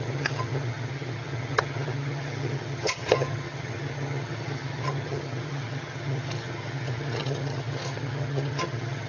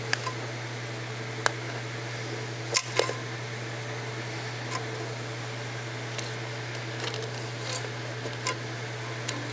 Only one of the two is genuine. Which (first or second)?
second